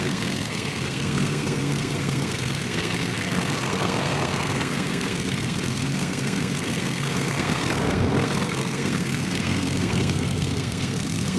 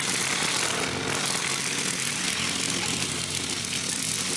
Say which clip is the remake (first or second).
first